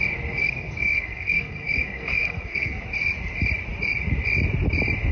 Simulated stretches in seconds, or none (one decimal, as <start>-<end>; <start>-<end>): 0.4-2.8